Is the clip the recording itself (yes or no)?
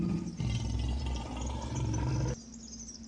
yes